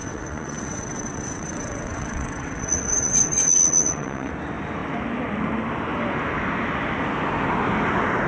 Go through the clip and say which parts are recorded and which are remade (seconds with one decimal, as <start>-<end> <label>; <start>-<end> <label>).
0.0-4.3 remade; 4.3-8.3 recorded